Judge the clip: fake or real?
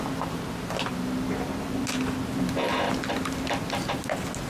real